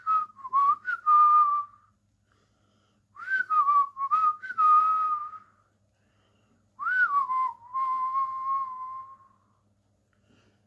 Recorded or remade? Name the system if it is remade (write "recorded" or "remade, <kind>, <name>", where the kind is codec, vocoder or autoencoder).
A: recorded